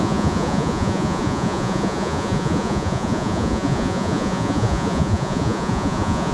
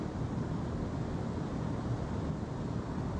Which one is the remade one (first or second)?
first